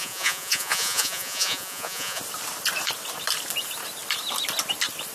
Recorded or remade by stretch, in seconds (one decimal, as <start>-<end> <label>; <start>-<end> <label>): 0.0-2.2 remade; 2.2-5.1 recorded

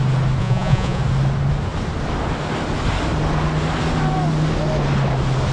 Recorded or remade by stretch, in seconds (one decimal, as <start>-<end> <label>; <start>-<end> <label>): 0.0-0.4 recorded; 0.4-1.0 remade; 1.0-5.5 recorded

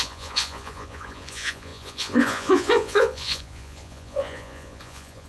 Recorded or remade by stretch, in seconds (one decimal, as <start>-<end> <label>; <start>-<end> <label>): 0.0-5.3 remade

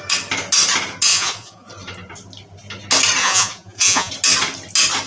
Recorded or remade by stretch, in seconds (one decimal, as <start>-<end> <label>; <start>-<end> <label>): 0.0-1.1 recorded; 1.1-1.7 remade; 1.7-3.2 recorded; 3.2-4.1 remade; 4.1-5.1 recorded

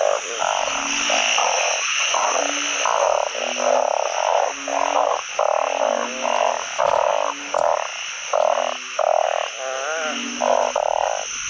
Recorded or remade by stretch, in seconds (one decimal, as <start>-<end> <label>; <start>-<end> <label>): 0.0-1.4 recorded; 1.4-2.4 remade; 2.4-11.5 recorded

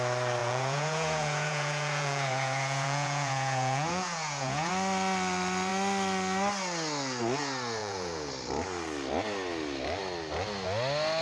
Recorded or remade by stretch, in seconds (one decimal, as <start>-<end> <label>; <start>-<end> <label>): 0.0-0.4 recorded; 0.4-4.7 remade; 4.7-7.8 recorded; 7.8-8.3 remade; 8.3-11.2 recorded